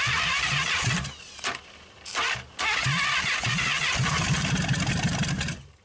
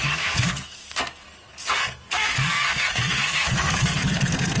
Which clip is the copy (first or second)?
second